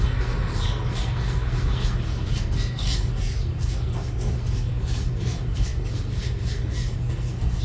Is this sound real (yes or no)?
no